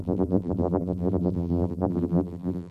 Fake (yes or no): yes